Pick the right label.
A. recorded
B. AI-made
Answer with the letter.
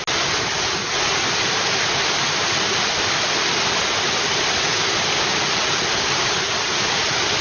A